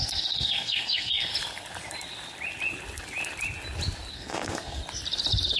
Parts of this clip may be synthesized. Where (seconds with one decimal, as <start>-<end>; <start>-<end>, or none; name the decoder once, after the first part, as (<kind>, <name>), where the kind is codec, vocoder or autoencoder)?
0.0-1.3 (codec, SNAC); 4.1-4.8